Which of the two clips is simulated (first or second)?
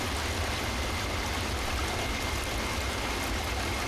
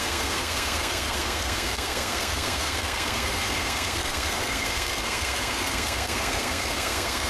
second